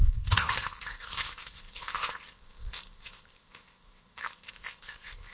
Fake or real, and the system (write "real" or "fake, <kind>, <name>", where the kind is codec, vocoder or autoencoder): fake, codec, ZipCodec